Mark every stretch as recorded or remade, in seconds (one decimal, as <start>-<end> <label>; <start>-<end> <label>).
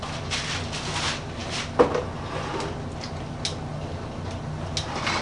0.0-5.2 recorded